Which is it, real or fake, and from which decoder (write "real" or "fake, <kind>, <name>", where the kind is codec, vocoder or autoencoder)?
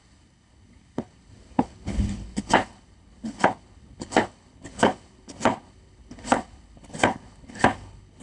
fake, codec, HILCodec